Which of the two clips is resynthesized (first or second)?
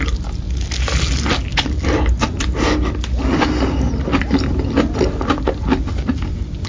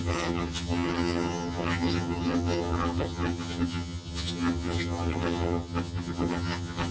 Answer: second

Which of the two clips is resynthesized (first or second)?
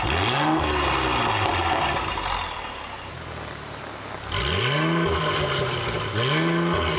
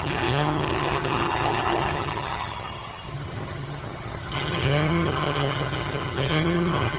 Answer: second